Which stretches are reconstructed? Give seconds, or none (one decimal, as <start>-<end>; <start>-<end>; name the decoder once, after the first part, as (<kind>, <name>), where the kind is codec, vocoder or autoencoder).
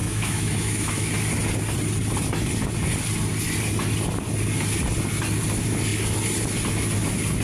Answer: 0.0-1.1 (autoencoder, DAC-VAE)